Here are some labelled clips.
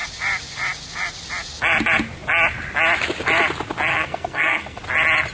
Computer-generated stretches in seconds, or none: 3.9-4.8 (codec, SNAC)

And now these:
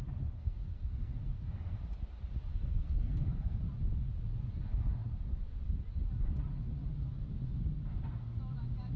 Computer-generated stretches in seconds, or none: 0.4-1.8 (codec, SNAC); 2.5-3.6

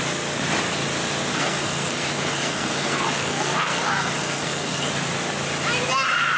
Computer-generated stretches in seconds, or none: 1.3-4.9 (codec, SNAC)